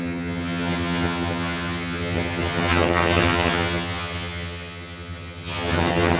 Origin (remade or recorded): remade